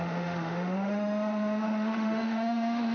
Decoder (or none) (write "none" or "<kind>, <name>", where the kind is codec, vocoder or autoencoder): autoencoder, DAC-VAE